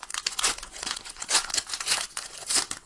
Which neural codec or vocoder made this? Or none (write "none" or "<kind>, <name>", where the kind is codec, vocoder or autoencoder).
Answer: vocoder, Vocos